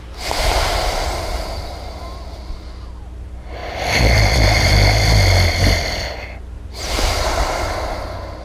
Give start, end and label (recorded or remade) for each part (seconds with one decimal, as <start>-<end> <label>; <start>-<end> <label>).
0.0-8.4 recorded